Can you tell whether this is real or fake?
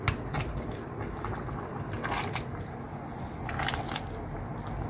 real